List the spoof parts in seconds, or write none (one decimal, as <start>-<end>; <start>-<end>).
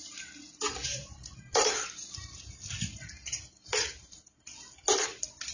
0.9-2.6